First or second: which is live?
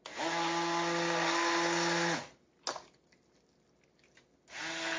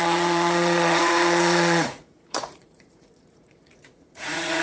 first